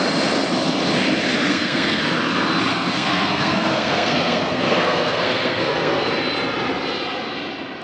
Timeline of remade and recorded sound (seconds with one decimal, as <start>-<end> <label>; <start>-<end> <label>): 0.0-1.5 recorded; 1.5-2.0 remade; 2.0-2.7 recorded; 2.7-6.1 remade; 6.1-7.8 recorded